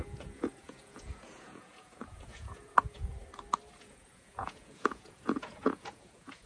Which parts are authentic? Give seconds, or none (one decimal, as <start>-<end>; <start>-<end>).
3.2-3.8